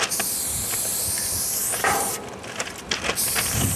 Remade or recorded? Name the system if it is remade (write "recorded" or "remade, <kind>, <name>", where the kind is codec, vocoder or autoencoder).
recorded